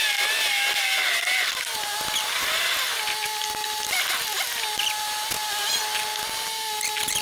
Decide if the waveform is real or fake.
real